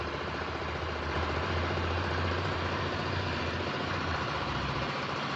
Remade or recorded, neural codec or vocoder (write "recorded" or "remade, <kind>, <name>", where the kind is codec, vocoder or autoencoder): remade, vocoder, BigVGAN v2